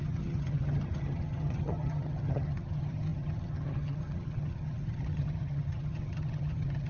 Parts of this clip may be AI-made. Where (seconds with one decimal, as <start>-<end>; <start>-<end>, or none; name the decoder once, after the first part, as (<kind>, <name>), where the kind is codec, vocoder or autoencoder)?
0.0-6.9 (vocoder, HiFi-GAN)